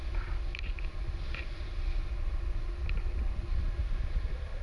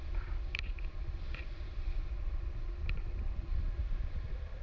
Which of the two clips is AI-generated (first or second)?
second